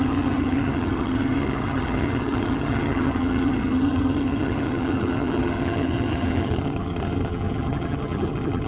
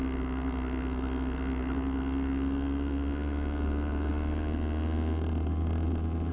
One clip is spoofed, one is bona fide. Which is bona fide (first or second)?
second